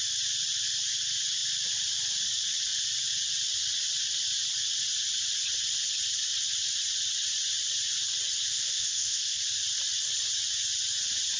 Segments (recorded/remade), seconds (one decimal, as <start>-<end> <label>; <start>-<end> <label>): 0.0-8.5 recorded; 8.5-9.4 remade; 9.4-11.4 recorded